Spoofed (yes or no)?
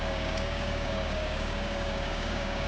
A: yes